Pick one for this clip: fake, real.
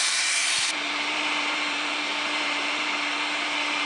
fake